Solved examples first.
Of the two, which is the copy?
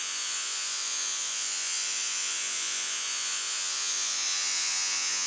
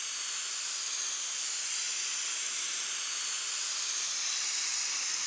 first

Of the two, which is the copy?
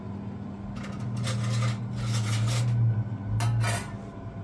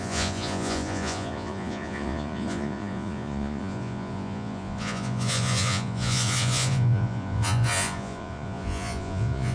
second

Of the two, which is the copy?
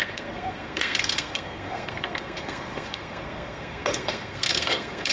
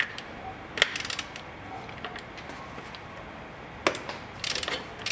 first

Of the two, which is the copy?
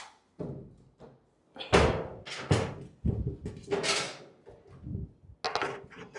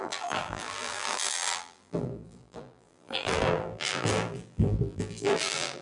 second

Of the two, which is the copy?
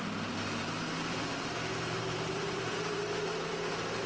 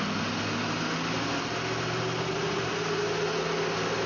first